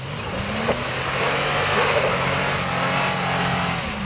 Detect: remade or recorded recorded